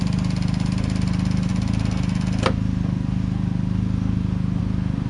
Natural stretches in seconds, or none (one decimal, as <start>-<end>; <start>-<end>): 0.0-5.1